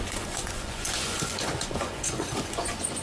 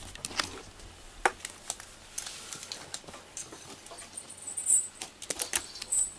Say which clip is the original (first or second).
second